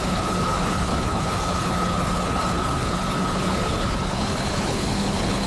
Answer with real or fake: fake